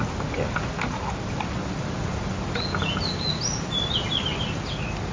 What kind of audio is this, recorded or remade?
recorded